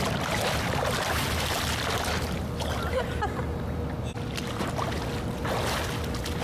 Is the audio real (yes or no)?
yes